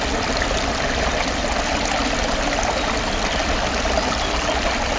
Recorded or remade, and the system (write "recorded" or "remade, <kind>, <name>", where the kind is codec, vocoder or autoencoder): recorded